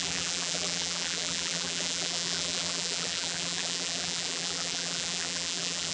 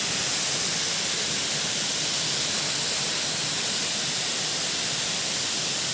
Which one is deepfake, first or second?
first